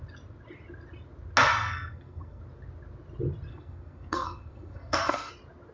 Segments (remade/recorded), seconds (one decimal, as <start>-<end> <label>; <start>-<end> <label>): 0.0-1.5 recorded; 1.5-2.4 remade; 2.4-3.5 recorded; 3.5-5.3 remade; 5.3-5.7 recorded